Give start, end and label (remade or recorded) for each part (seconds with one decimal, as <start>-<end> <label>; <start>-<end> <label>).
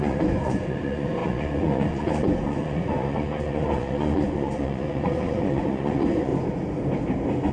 0.0-6.3 remade; 6.3-7.5 recorded